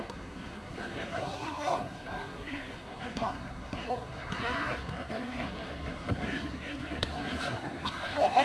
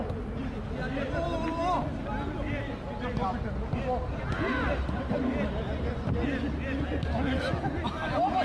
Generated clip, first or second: first